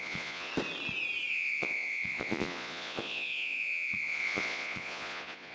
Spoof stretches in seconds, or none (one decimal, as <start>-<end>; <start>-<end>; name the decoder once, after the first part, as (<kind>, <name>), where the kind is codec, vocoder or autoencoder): 0.0-0.5 (vocoder, Vocos); 1.3-5.5